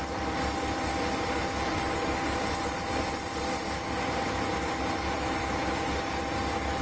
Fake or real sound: real